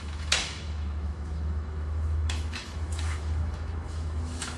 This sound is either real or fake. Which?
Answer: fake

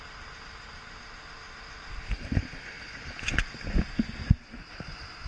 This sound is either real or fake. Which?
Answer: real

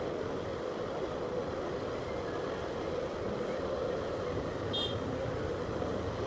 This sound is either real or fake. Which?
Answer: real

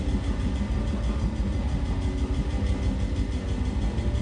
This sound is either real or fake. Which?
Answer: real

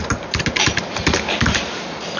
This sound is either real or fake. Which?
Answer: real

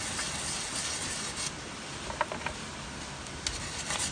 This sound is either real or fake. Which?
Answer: real